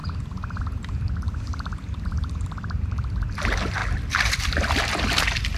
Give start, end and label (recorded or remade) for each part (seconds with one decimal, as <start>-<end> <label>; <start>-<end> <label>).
0.0-3.8 remade; 3.8-4.3 recorded; 4.3-5.6 remade

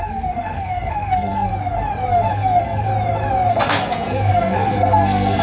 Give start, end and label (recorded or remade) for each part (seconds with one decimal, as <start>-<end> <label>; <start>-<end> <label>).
0.0-1.5 remade; 1.5-2.3 recorded; 2.3-2.9 remade; 2.9-3.5 recorded; 3.5-5.4 remade

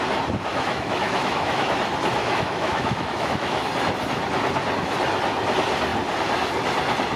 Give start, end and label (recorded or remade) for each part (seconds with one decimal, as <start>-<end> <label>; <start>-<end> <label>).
0.0-0.5 recorded; 0.5-1.8 remade; 1.8-2.2 recorded; 2.2-3.7 remade; 3.7-7.2 recorded

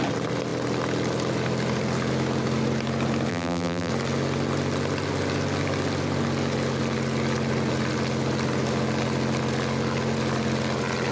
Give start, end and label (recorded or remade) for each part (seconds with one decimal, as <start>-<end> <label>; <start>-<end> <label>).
0.0-3.3 recorded; 3.3-3.9 remade; 3.9-11.1 recorded